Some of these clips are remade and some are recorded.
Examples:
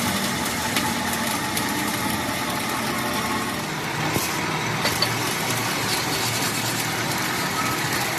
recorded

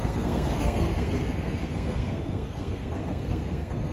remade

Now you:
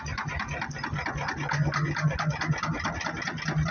recorded